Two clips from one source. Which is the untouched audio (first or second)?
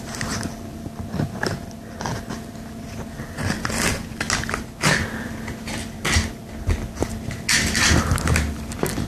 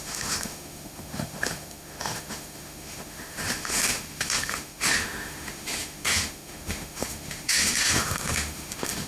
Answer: first